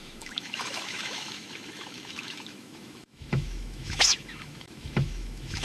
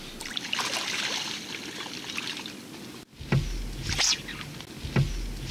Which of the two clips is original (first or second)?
second